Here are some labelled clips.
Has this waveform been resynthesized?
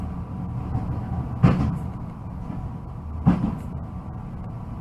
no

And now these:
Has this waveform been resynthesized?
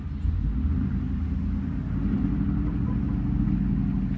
no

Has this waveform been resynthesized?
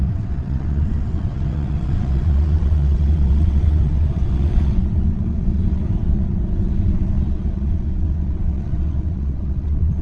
yes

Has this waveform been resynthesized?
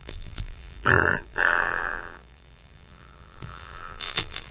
yes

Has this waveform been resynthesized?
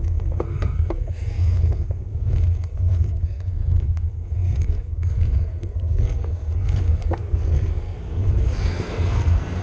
yes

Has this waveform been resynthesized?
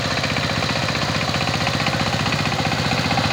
no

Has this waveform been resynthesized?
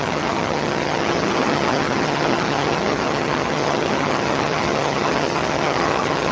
yes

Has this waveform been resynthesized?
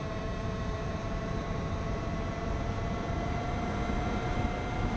yes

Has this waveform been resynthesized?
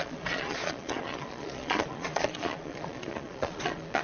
yes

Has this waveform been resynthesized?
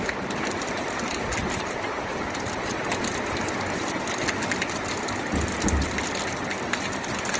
no